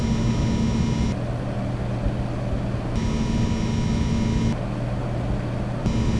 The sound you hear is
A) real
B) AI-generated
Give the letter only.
A